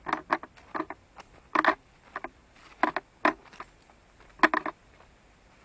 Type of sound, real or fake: real